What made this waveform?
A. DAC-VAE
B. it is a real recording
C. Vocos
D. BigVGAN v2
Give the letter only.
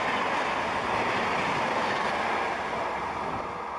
B